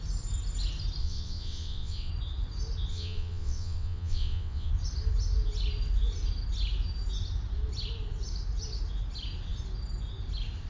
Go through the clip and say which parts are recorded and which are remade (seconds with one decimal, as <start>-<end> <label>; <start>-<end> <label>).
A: 0.0-1.0 recorded; 1.0-2.1 remade; 2.1-2.9 recorded; 2.9-4.7 remade; 4.7-10.7 recorded